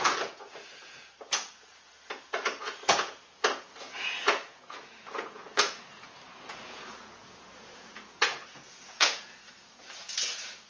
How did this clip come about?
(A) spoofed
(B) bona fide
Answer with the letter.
A